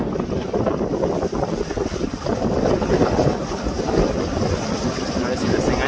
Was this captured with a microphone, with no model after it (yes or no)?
yes